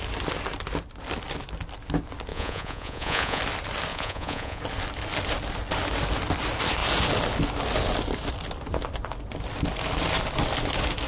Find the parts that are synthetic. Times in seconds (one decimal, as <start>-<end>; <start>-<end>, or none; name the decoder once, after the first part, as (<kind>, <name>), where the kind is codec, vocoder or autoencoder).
2.3-3.4 (vocoder, Vocos); 3.9-4.6